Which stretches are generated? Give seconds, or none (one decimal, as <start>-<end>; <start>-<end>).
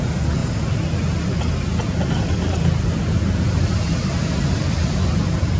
none